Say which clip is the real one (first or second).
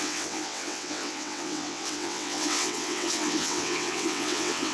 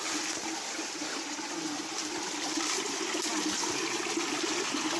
second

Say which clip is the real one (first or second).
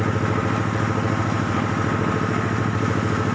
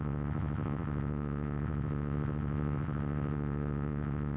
first